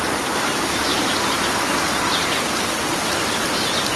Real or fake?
real